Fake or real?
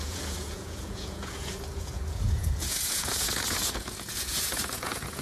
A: fake